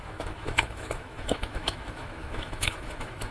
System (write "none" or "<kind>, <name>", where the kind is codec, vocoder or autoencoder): autoencoder, DAC-VAE